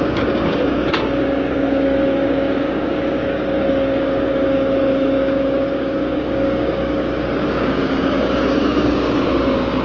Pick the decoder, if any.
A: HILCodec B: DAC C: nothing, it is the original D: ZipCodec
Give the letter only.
B